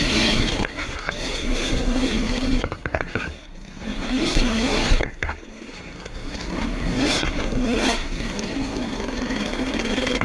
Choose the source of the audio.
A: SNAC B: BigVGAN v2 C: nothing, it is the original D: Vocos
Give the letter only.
A